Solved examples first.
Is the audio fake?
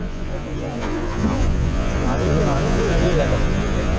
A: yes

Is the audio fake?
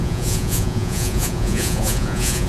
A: yes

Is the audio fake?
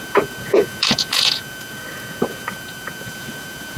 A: yes